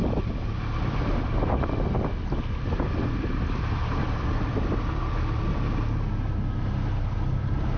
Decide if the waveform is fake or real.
real